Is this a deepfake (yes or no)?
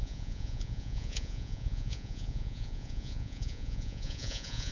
yes